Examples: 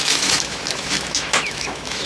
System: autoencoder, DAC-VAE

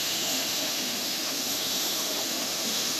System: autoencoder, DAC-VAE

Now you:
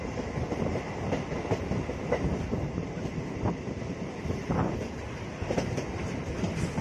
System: none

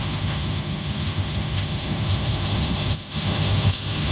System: autoencoder, DAC-VAE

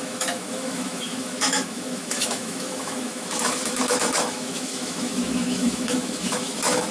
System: autoencoder, DAC-VAE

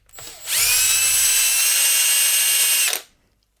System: none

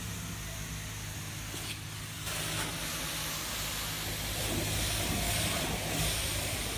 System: none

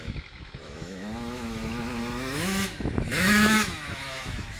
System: autoencoder, DAC-VAE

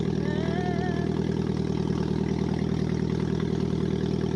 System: none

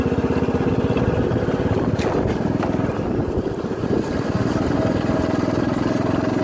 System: none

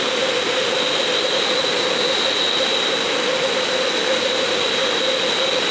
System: none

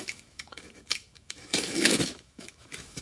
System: autoencoder, DAC-VAE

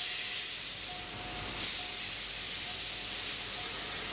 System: none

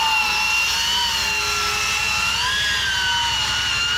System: none